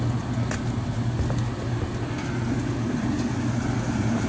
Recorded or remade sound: recorded